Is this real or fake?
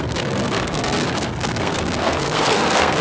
fake